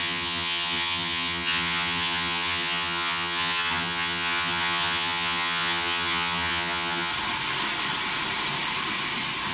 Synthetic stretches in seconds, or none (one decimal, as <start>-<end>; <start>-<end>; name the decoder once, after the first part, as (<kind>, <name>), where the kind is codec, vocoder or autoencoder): 0.0-7.1 (vocoder, HiFi-GAN)